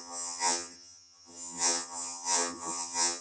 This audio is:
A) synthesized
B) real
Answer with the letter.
A